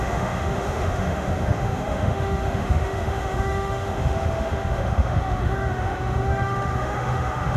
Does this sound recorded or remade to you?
remade